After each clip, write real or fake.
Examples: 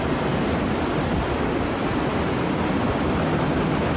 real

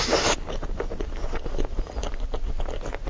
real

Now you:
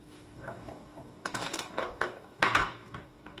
fake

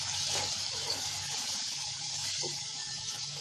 fake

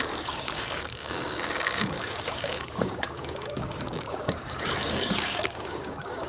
fake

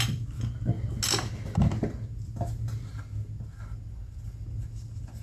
real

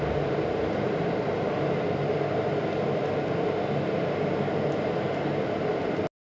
real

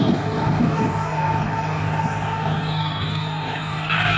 fake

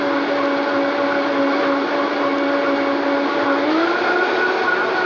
real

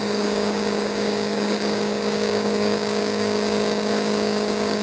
fake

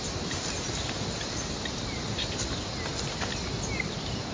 real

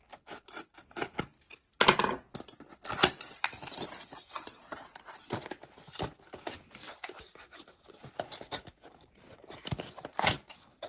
real